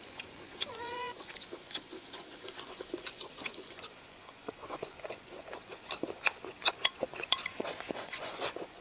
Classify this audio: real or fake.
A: fake